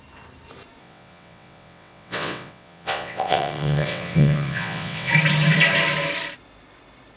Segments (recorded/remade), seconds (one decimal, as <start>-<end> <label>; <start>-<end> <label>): 0.0-0.8 recorded; 0.8-5.1 remade; 5.1-7.2 recorded